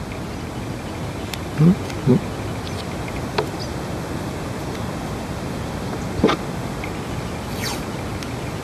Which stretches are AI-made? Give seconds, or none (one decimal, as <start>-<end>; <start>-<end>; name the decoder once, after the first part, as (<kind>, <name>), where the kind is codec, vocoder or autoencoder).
none